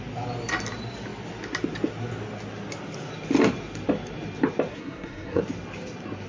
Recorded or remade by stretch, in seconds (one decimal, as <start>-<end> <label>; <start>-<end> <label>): 0.0-4.7 recorded; 4.7-5.4 remade; 5.4-6.3 recorded